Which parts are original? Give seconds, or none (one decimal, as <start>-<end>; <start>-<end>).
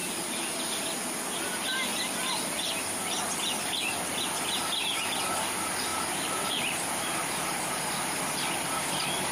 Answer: 0.6-5.9; 7.2-9.3